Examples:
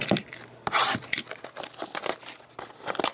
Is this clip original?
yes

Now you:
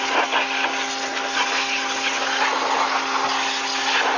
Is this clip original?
yes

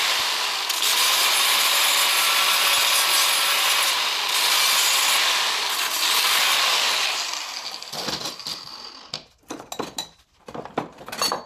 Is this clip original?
yes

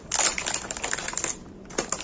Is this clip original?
yes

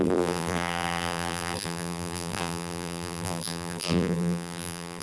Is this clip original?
no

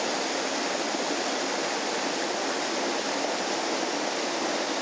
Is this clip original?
yes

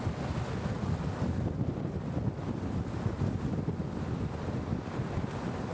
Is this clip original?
yes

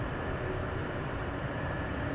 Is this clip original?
no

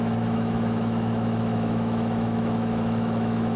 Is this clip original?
no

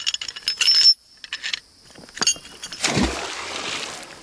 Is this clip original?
yes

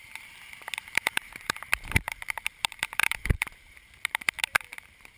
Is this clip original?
no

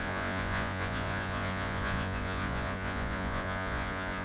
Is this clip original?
no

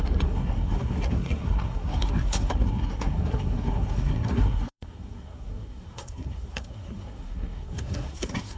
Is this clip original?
no